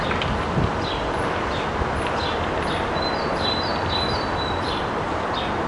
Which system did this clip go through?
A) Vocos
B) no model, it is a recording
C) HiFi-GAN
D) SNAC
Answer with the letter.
B